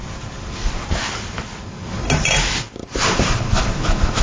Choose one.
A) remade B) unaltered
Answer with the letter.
B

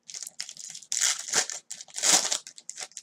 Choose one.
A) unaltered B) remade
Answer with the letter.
A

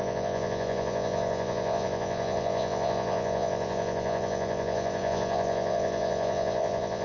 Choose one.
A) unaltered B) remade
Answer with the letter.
B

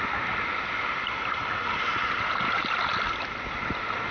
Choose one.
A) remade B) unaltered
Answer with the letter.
B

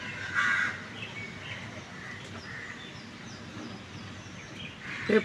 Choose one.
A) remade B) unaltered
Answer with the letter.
B